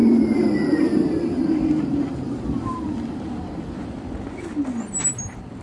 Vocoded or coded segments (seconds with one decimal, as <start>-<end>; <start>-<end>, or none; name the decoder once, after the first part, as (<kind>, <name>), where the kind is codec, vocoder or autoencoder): 0.0-3.2 (vocoder, BigVGAN v2)